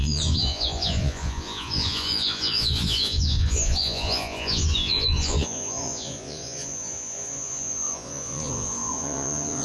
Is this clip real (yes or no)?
no